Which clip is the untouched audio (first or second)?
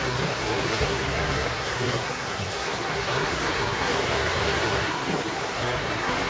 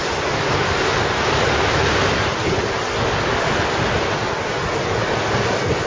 second